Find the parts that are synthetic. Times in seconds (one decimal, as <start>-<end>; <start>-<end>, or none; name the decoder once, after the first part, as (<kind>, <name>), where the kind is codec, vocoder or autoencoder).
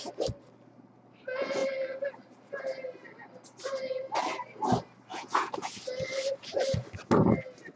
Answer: 5.1-5.7 (vocoder, Vocos)